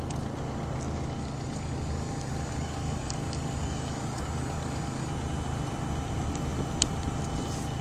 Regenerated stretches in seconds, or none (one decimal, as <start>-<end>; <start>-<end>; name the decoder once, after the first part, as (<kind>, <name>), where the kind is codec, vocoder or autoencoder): 1.2-5.1 (codec, DAC)

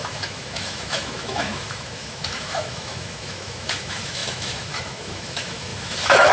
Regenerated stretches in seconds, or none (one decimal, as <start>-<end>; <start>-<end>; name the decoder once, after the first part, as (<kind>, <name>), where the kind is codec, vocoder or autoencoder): 0.0-6.3 (autoencoder, DAC-VAE)

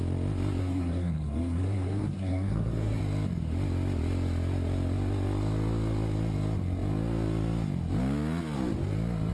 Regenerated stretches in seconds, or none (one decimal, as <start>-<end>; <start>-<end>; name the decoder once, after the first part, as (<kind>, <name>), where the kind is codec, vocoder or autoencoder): 0.6-3.0 (codec, SNAC)

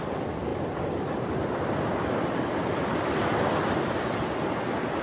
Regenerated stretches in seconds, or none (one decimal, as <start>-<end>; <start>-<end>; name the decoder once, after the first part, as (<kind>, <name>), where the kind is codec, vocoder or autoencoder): none

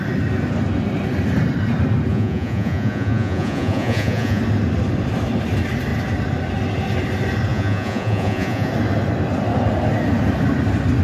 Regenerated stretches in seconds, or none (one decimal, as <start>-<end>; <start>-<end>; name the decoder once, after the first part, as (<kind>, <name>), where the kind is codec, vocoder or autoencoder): 2.1-4.4 (vocoder, Vocos); 7.5-8.7

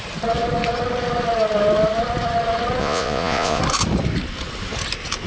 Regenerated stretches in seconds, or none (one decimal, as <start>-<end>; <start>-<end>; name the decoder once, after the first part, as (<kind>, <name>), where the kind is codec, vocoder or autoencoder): 2.8-3.6 (vocoder, Vocos)

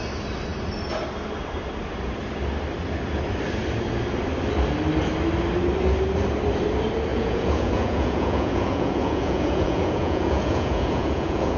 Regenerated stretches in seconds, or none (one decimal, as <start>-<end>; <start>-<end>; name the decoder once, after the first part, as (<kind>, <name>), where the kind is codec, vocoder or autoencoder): 7.1-11.6 (vocoder, Vocos)

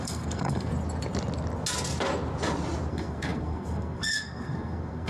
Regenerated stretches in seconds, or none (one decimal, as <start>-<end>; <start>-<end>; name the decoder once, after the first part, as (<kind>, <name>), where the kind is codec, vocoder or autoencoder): 0.0-0.7 (codec, SNAC); 2.9-5.1